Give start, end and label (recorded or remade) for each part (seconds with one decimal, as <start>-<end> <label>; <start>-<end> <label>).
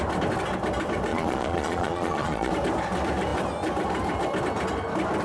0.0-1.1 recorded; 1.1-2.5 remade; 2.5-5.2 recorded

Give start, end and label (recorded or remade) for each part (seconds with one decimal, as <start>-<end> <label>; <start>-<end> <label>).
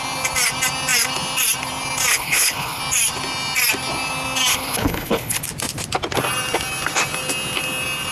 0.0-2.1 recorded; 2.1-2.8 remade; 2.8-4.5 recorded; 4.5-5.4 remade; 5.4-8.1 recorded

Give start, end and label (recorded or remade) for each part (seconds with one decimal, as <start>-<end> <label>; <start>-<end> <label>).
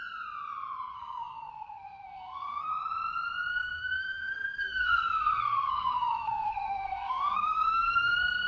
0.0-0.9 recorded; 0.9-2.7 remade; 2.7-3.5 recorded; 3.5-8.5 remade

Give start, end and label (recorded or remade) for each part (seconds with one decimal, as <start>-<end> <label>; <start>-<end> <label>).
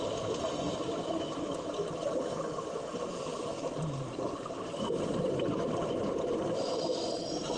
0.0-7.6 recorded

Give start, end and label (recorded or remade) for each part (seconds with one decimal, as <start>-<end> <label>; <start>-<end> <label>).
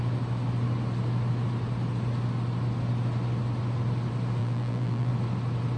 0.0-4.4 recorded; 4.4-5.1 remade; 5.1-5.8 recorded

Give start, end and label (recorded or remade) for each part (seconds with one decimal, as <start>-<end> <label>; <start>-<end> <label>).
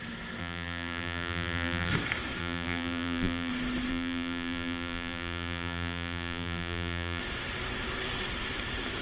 0.0-0.4 recorded; 0.4-1.9 remade; 1.9-2.4 recorded; 2.4-3.5 remade; 3.5-3.9 recorded; 3.9-7.2 remade; 7.2-9.0 recorded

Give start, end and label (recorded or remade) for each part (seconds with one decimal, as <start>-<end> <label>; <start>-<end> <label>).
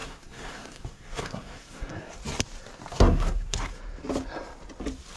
0.0-2.2 remade; 2.2-2.9 recorded; 2.9-3.7 remade; 3.7-5.2 recorded